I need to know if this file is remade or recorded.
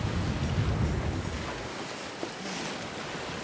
recorded